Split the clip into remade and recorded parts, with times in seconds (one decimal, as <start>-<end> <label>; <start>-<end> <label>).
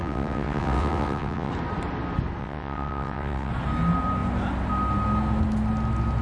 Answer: 0.0-1.5 remade; 1.5-2.4 recorded; 2.4-3.5 remade; 3.5-6.2 recorded